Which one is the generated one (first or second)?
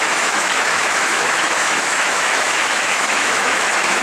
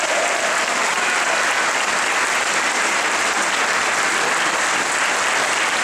first